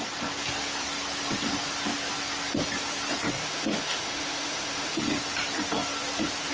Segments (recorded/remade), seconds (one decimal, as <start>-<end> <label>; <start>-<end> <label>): 0.0-3.4 recorded; 3.4-5.0 remade; 5.0-6.5 recorded